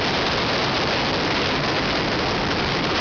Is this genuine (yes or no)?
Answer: yes